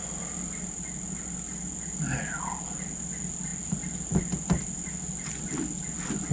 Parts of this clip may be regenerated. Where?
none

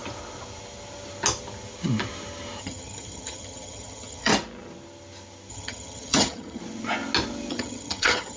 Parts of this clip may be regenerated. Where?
2.6-4.3 (vocoder, HiFi-GAN); 5.5-6.6; 7.5-8.4

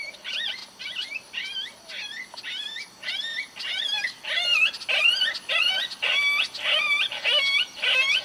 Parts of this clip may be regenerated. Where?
none

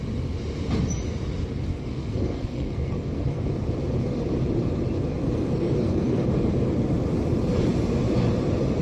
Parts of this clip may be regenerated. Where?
1.7-3.4 (codec, SNAC); 5.2-6.3

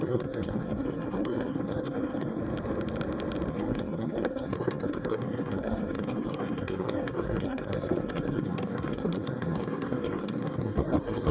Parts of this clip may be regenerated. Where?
0.0-2.4 (codec, SNAC); 3.5-11.3

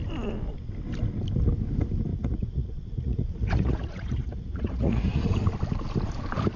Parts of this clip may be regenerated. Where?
2.1-5.3 (vocoder, Vocos)